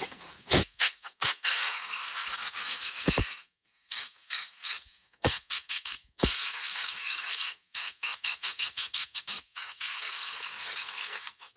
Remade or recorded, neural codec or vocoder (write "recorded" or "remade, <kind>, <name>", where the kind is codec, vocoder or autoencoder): remade, codec, SNAC